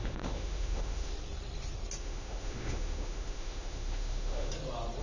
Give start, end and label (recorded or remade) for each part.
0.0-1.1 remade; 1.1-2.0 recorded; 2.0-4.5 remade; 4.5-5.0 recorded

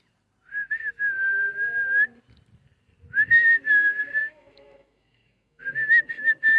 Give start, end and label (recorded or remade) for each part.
0.0-4.2 recorded; 4.2-5.6 remade; 5.6-6.6 recorded